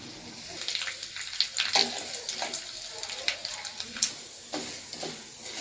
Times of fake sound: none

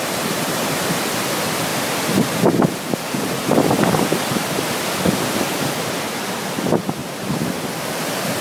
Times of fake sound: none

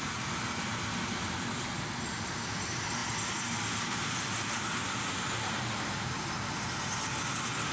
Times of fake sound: none

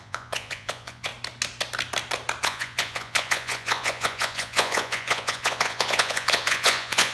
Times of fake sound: 0.0-1.1 (vocoder, Vocos); 2.4-7.1

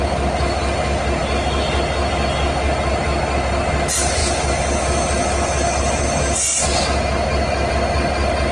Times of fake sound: none